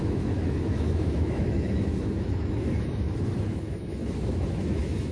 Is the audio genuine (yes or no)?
no